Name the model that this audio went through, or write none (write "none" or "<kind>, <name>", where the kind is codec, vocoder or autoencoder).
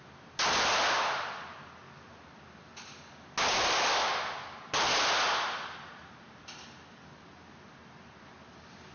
none